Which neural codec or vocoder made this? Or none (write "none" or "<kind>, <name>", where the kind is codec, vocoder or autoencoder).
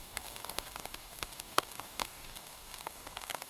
codec, DAC